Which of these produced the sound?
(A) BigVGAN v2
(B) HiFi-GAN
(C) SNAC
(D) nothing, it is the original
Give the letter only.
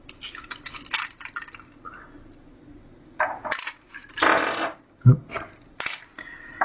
D